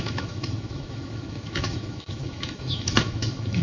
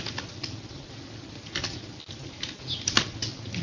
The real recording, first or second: second